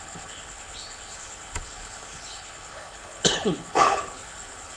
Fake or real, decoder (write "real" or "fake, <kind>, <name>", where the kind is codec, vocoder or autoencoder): fake, codec, HILCodec